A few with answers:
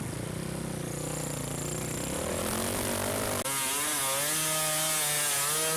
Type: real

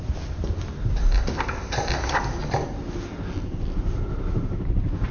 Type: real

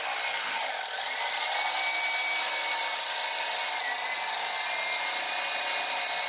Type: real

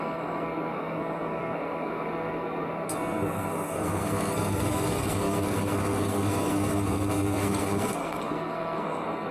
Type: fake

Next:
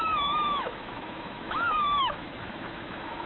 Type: fake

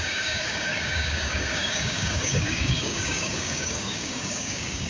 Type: fake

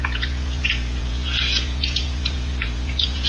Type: fake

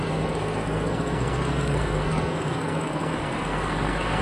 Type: fake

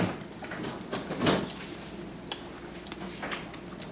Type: real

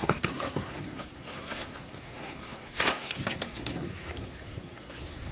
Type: fake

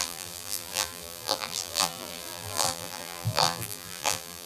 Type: fake